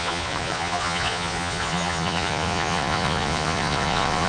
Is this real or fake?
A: fake